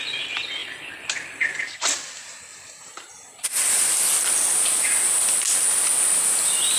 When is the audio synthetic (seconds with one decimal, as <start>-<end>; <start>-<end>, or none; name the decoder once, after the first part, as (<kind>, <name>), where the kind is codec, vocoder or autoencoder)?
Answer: none